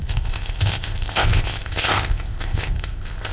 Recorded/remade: remade